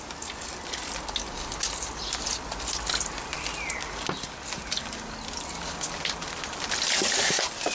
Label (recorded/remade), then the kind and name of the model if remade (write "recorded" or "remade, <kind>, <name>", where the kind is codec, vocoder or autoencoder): recorded